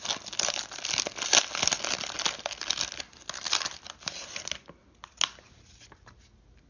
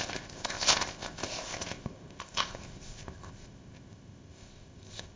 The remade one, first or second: second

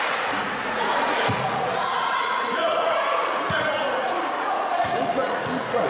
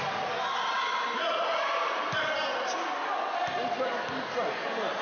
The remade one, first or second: first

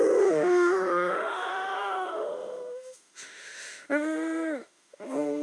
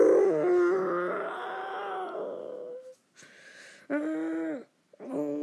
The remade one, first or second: first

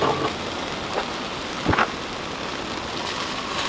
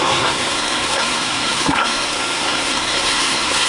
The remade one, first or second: second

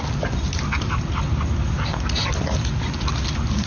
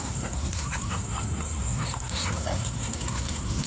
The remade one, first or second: second